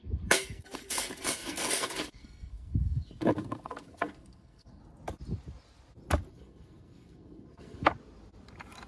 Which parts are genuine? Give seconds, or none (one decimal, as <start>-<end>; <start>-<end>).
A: 4.8-6.3; 7.9-8.9